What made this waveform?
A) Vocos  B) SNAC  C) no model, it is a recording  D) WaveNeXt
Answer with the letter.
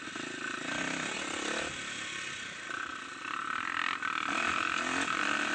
C